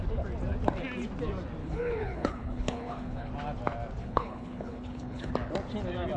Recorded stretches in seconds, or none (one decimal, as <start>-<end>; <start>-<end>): 0.0-1.6; 3.3-4.0; 5.3-6.2